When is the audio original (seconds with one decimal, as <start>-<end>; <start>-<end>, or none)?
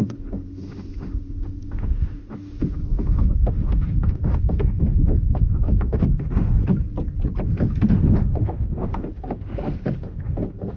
6.6-7.5